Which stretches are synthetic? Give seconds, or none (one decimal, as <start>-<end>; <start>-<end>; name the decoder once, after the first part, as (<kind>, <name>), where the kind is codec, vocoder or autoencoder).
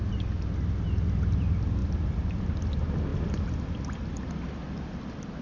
none